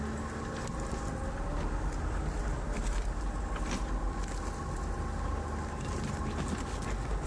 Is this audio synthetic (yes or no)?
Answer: no